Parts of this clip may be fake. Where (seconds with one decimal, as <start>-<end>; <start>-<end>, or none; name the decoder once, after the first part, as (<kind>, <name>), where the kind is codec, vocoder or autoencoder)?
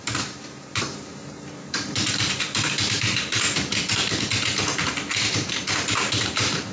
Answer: 0.0-3.7 (vocoder, BigVGAN v2); 5.3-6.7